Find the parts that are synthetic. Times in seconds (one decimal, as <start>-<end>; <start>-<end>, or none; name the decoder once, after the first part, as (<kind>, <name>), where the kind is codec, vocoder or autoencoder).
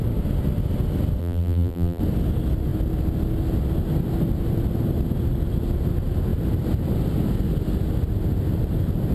1.2-2.0 (vocoder, BigVGAN v2)